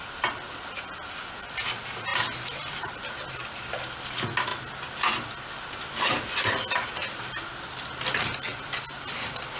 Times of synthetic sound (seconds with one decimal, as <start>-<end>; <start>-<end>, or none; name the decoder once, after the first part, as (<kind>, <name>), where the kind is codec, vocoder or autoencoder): 2.1-3.7 (vocoder, BigVGAN v2)